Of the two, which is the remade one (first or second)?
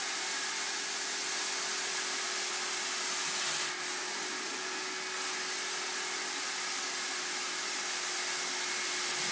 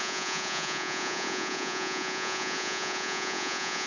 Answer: second